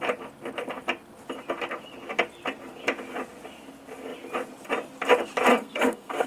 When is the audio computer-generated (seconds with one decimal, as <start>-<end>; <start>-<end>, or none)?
5.5-6.3

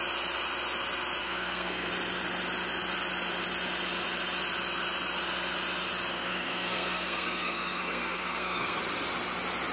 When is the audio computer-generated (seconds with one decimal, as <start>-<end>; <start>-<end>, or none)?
1.2-1.9; 6.1-8.8

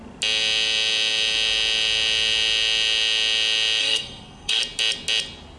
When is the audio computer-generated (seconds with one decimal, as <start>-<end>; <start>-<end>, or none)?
3.8-4.6

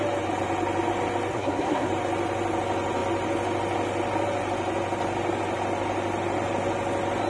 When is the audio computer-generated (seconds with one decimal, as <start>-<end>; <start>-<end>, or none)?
1.3-1.9

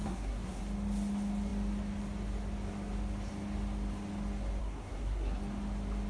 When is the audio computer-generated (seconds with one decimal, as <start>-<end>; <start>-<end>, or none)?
0.0-0.6; 4.6-5.4

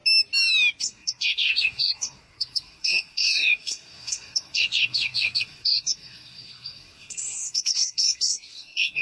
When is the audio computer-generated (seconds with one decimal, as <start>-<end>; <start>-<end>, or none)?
0.8-9.0

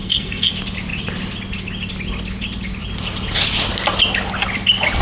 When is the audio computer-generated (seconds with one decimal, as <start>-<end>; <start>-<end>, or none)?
0.0-0.5